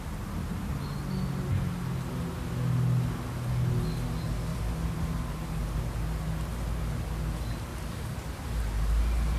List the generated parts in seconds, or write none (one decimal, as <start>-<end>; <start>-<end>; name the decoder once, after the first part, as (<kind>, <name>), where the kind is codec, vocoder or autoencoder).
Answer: 4.5-5.2 (vocoder, BigVGAN v2); 7.7-8.6